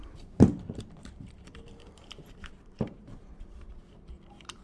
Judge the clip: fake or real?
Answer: fake